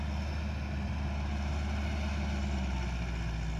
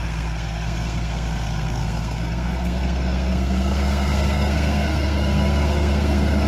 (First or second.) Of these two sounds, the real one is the first